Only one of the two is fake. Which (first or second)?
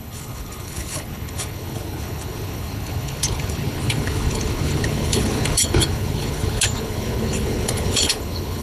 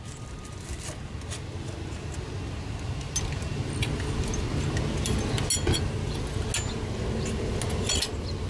first